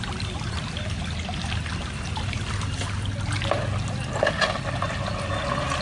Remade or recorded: recorded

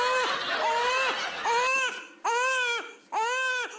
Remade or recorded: recorded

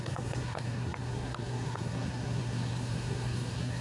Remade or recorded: remade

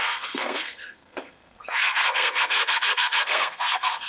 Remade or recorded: remade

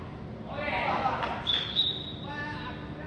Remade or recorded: recorded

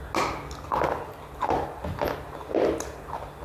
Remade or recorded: recorded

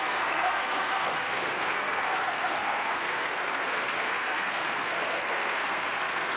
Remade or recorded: remade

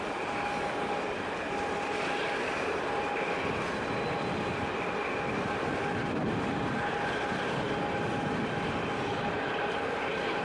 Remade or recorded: recorded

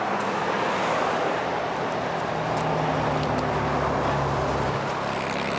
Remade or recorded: recorded